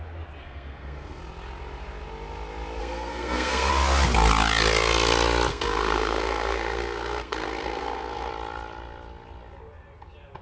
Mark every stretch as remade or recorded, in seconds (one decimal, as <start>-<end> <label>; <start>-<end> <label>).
0.0-0.4 recorded; 0.4-1.2 remade; 1.2-2.8 recorded; 2.8-3.7 remade; 3.7-5.5 recorded; 5.5-8.3 remade; 8.3-10.4 recorded